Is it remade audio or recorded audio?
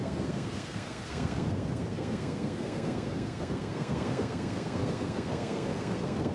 remade